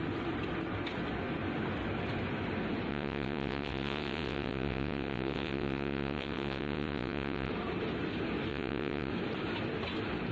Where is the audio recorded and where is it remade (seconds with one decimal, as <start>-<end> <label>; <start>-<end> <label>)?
0.0-2.9 recorded; 2.9-7.5 remade; 7.5-8.5 recorded; 8.5-9.1 remade; 9.1-10.3 recorded